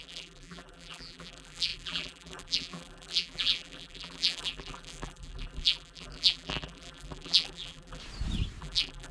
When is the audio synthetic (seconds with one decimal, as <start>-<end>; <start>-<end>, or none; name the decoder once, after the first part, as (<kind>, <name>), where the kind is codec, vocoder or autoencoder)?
0.0-8.0 (vocoder, BigVGAN v2); 8.6-9.1